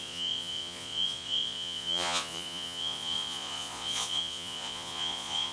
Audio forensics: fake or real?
fake